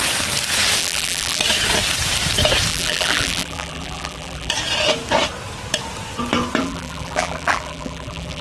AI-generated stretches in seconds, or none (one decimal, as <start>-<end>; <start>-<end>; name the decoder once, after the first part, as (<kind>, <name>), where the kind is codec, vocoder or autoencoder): 0.8-1.4 (vocoder, BigVGAN v2); 2.7-4.5; 6.6-8.4